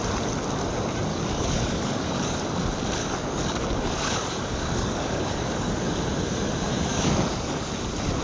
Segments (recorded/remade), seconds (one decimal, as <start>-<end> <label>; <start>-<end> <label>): 0.0-1.1 recorded; 1.1-2.4 remade; 2.4-3.0 recorded; 3.0-5.9 remade; 5.9-6.9 recorded; 6.9-7.7 remade; 7.7-8.2 recorded